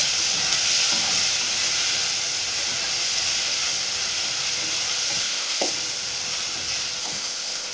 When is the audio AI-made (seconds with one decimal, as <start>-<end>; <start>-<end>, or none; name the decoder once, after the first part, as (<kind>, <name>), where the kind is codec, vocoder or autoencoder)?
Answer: 5.2-5.7 (codec, ZipCodec); 7.0-7.7